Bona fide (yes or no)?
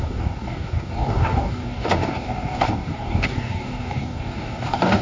no